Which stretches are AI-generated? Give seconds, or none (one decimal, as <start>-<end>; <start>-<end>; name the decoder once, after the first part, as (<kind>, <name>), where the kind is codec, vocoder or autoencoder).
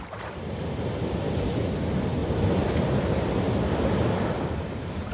none